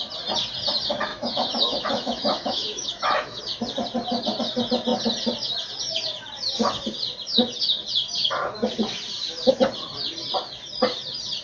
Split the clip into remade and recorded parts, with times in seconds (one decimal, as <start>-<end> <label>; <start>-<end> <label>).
0.0-1.1 recorded; 1.1-3.4 remade; 3.4-11.4 recorded